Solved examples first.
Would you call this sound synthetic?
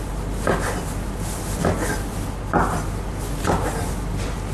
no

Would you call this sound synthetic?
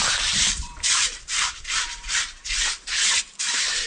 yes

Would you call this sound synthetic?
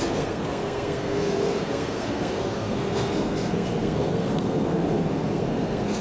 yes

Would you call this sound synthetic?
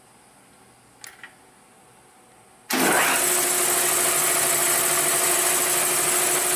no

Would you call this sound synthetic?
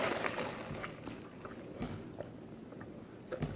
no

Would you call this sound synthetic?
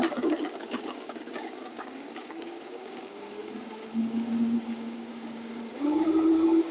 yes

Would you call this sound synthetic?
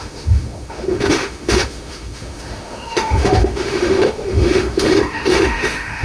yes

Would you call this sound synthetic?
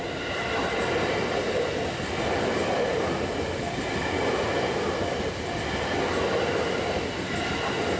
no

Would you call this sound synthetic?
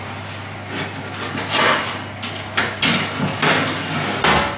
no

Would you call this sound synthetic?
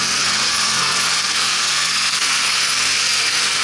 yes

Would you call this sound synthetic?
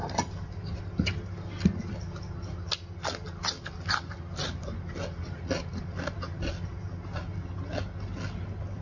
no